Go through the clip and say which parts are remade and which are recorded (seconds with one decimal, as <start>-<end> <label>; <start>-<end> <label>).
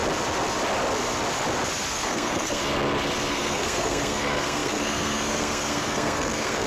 0.0-1.9 recorded; 1.9-2.6 remade; 2.6-3.3 recorded; 3.3-6.7 remade